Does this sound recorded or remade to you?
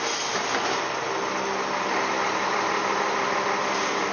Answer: recorded